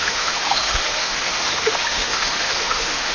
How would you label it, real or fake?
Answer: fake